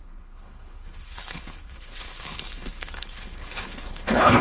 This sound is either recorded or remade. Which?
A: remade